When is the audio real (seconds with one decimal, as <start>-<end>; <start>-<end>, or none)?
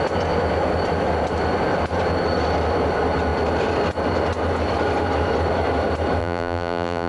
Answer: 0.0-6.2